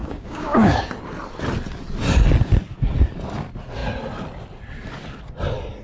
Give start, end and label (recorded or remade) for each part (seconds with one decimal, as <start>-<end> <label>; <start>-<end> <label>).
0.0-0.9 remade; 0.9-5.8 recorded